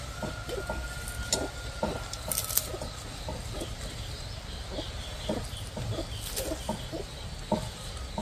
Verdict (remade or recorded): recorded